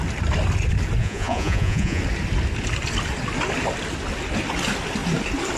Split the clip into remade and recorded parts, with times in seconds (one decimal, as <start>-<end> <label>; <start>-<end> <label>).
0.0-1.0 recorded; 1.0-2.0 remade; 2.0-5.6 recorded